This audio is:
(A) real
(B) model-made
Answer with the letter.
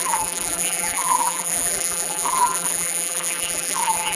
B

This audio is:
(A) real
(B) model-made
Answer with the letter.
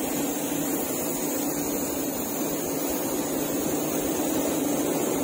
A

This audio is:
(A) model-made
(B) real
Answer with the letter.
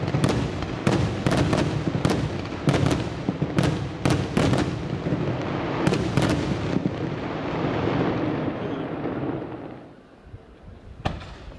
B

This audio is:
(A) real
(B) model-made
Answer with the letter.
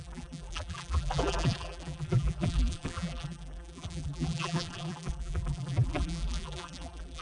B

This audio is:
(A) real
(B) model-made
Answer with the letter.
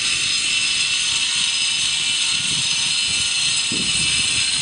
A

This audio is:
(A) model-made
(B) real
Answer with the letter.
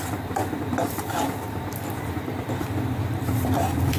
A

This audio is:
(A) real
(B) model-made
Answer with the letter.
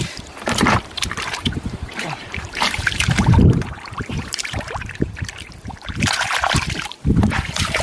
B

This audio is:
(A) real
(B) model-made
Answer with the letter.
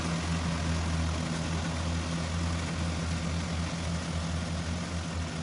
A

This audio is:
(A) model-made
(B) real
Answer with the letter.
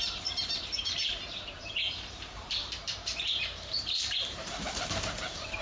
A